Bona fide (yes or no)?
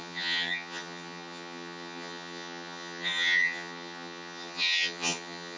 no